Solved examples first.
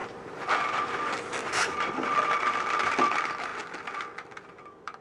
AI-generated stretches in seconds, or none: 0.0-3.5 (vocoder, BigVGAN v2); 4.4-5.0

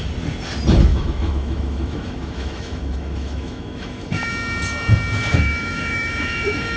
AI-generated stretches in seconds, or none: 0.9-4.3 (autoencoder, DAC-VAE); 5.3-6.8

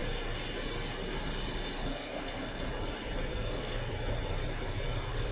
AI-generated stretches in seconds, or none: 1.9-2.6 (codec, SNAC); 3.3-3.9

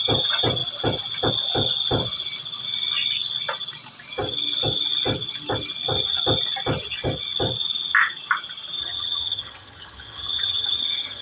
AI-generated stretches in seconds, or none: 8.8-11.2 (vocoder, HiFi-GAN)

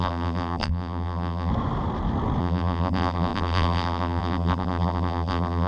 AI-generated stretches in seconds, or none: 0.0-1.5 (vocoder, BigVGAN v2); 2.4-5.7

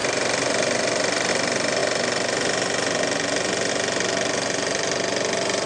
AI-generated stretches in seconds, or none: none

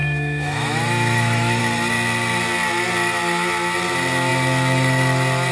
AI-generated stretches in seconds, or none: 0.0-1.6 (autoencoder, DAC-VAE)

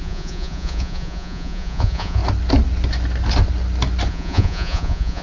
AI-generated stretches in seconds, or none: 0.0-2.2 (vocoder, Vocos); 4.1-5.2